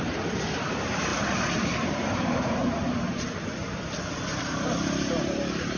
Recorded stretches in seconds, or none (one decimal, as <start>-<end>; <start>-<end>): none